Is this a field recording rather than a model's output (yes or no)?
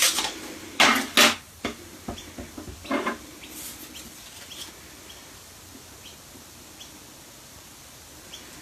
yes